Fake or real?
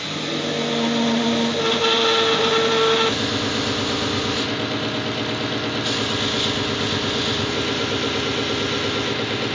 real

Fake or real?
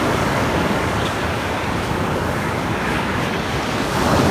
fake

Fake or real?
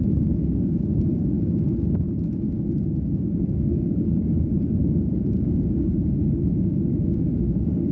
fake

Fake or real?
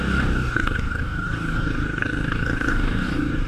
fake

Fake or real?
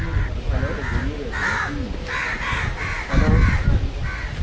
real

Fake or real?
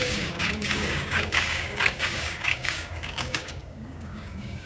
fake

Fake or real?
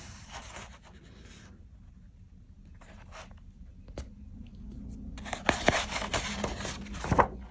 real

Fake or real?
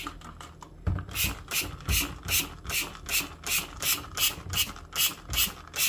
real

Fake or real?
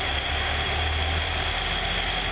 real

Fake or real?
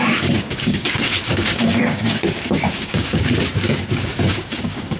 fake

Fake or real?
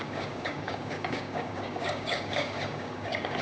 fake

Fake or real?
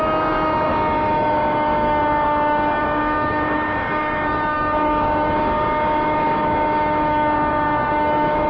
fake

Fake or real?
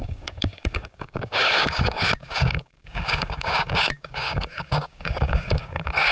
fake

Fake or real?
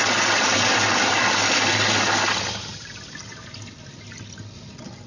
real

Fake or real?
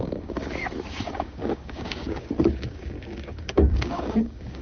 fake